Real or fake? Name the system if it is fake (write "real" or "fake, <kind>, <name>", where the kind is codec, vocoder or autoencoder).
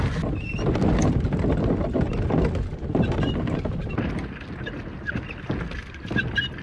real